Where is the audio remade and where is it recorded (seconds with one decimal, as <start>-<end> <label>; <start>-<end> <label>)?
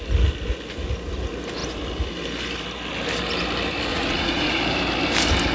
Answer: 0.0-3.9 recorded; 3.9-4.6 remade; 4.6-5.5 recorded